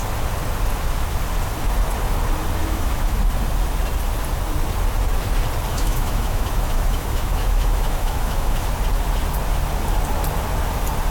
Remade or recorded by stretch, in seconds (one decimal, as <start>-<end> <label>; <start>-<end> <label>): 0.0-2.6 recorded; 2.6-3.2 remade; 3.2-5.7 recorded; 5.7-8.7 remade; 8.7-11.1 recorded

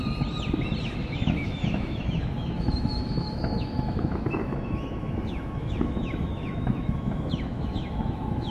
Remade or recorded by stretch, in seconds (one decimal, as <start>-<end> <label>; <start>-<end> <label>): 0.0-0.8 recorded; 0.8-8.5 remade

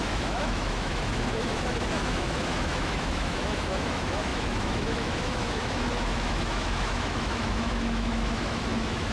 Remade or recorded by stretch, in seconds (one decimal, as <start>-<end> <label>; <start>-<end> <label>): 0.0-9.1 remade